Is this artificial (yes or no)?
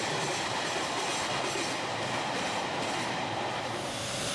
no